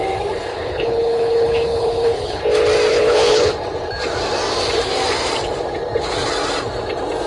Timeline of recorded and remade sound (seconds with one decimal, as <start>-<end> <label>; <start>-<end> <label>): 0.0-0.5 recorded; 0.5-2.4 remade; 2.4-2.9 recorded; 2.9-3.5 remade; 3.5-7.3 recorded